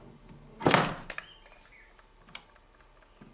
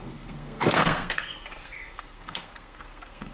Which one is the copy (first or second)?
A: second